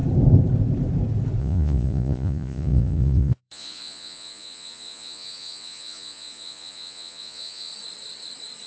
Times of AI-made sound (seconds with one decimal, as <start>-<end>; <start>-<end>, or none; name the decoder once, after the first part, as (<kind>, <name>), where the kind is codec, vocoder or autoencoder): 1.4-7.7 (vocoder, Vocos)